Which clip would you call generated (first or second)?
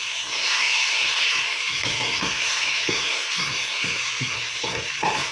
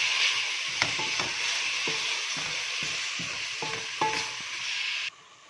first